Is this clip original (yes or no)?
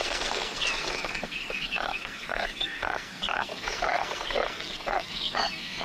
no